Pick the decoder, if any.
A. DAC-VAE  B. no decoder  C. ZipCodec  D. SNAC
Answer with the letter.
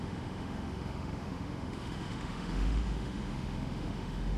A